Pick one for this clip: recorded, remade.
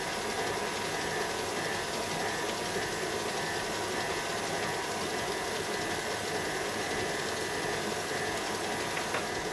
recorded